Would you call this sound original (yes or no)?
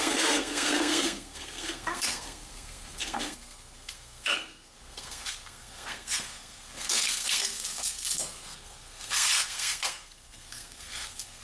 no